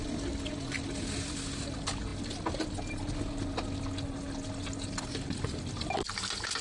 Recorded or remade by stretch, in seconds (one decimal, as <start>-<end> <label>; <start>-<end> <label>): 0.0-6.6 recorded